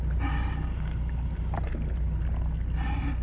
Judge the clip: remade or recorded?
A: recorded